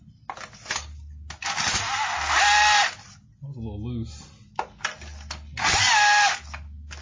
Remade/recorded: recorded